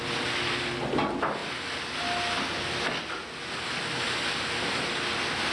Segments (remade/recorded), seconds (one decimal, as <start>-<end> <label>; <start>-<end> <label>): 0.0-5.5 recorded